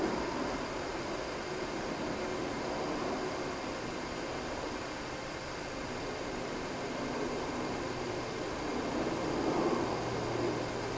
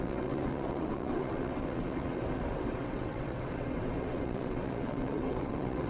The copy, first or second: second